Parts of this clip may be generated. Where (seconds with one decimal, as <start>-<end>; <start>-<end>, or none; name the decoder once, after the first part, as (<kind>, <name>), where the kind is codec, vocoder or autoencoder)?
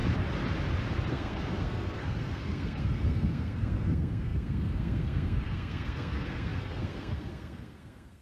1.1-8.2 (codec, SNAC)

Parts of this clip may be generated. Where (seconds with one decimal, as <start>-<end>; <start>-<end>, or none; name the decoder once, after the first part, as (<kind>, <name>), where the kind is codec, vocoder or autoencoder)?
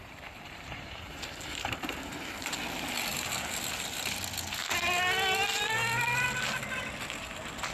0.0-2.6 (vocoder, BigVGAN v2)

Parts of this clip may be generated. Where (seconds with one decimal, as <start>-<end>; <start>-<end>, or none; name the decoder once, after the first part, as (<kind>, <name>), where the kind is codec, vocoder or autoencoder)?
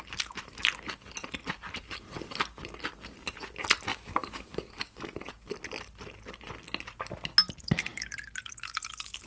3.9-5.3 (autoencoder, DAC-VAE)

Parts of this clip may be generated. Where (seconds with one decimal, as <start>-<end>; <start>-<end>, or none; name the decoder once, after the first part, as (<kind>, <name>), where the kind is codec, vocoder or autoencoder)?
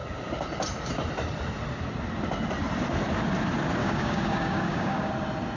3.8-5.1 (codec, DAC)